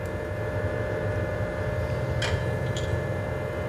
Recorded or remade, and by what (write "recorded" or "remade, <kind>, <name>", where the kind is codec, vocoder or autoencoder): recorded